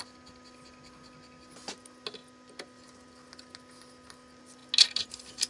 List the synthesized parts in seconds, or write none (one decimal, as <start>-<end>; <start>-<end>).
none